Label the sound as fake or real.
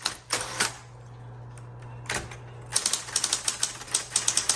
real